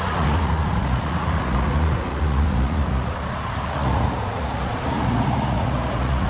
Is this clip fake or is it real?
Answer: fake